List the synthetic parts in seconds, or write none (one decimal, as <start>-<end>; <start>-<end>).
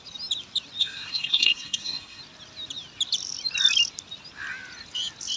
0.8-2.2